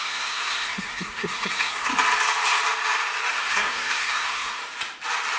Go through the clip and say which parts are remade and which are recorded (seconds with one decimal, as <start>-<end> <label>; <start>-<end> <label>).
0.0-1.9 remade; 1.9-3.3 recorded; 3.3-4.6 remade; 4.6-5.4 recorded